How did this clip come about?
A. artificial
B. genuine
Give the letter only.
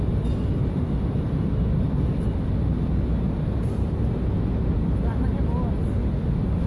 B